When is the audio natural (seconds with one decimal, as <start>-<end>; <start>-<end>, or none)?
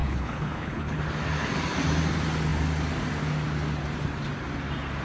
1.0-5.0